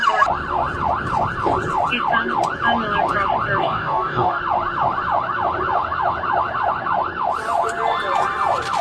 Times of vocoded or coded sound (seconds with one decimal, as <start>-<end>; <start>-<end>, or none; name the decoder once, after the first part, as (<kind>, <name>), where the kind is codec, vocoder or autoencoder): 3.6-4.4 (codec, DAC)